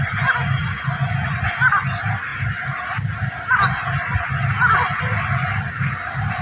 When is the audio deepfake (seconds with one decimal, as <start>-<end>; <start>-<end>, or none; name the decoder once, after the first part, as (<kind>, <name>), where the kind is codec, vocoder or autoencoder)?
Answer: none

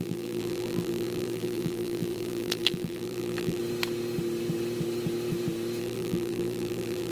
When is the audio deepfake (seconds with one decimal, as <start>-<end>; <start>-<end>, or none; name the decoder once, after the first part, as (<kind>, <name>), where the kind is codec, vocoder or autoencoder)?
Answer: 0.0-3.6 (vocoder, BigVGAN v2); 5.8-7.1